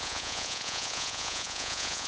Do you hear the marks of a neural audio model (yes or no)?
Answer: yes